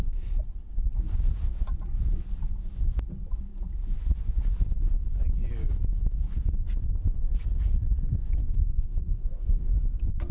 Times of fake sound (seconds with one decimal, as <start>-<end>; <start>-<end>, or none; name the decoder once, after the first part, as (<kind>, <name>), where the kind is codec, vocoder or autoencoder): 8.4-9.7 (codec, SNAC)